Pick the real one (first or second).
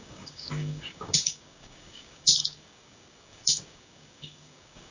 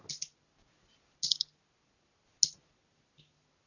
second